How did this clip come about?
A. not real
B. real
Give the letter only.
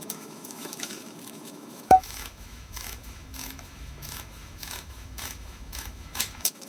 A